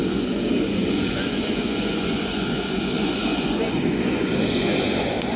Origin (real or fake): fake